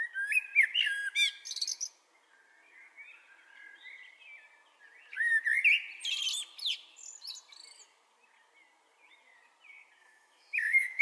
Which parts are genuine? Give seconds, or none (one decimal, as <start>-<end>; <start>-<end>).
0.0-10.0